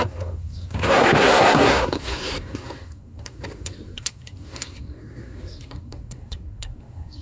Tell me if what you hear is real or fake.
fake